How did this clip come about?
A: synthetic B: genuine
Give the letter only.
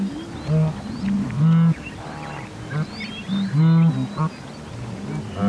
B